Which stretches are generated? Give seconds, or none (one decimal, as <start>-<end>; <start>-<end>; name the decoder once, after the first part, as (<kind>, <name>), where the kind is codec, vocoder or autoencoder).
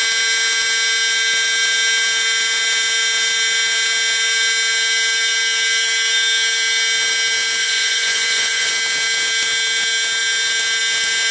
7.6-8.7 (vocoder, Vocos)